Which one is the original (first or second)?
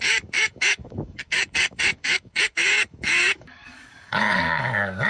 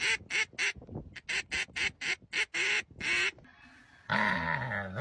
second